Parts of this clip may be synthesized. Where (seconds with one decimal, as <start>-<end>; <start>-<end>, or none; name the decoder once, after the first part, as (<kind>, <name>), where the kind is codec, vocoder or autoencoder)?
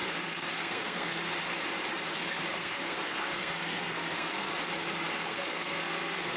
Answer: 0.0-1.2 (codec, SNAC); 2.4-4.5; 5.1-6.4